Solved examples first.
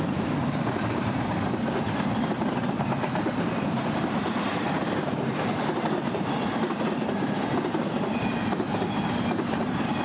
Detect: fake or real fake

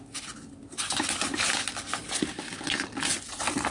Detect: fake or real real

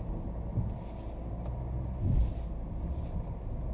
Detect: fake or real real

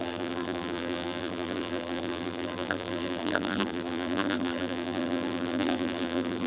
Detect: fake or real fake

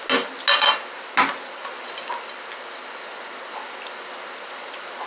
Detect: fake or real real